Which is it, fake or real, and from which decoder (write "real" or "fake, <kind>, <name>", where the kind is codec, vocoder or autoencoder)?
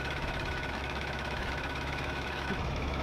fake, autoencoder, DAC-VAE